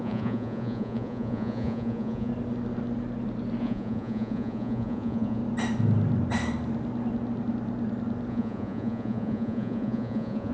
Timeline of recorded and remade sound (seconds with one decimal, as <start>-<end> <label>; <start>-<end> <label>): 0.0-2.3 remade; 2.3-3.6 recorded; 3.6-5.4 remade; 5.4-8.3 recorded; 8.3-10.5 remade